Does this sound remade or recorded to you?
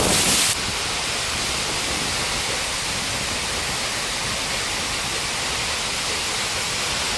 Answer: recorded